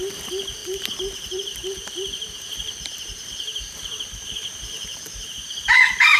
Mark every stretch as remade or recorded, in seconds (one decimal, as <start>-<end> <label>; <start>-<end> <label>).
0.0-0.6 recorded; 0.6-4.3 remade; 4.3-4.9 recorded; 4.9-6.2 remade